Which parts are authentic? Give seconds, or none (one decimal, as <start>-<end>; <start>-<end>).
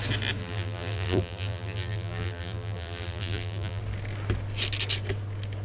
0.0-0.4; 3.8-5.6